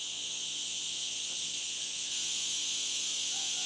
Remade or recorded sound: remade